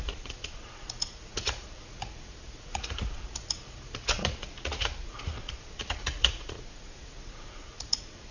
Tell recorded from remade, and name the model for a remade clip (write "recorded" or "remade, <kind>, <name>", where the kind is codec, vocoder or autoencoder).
remade, vocoder, Vocos